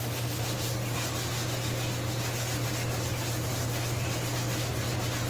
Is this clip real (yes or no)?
yes